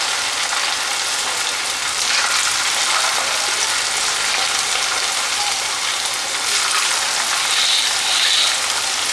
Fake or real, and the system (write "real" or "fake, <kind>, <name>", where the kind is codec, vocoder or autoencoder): real